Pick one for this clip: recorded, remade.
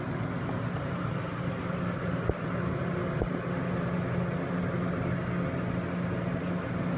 recorded